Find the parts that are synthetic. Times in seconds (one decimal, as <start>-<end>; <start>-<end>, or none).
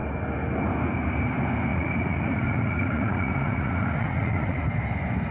1.7-4.6